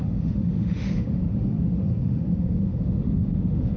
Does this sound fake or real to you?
fake